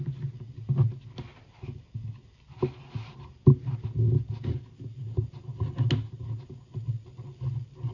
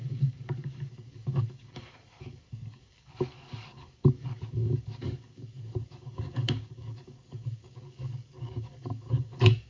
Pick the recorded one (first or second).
first